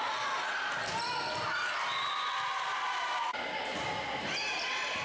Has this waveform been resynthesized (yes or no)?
no